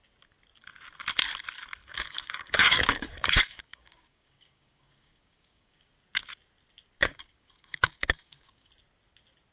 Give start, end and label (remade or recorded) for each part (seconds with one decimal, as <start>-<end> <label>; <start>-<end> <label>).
0.0-1.8 recorded; 1.8-5.9 remade; 5.9-7.0 recorded; 7.0-8.7 remade; 8.7-9.5 recorded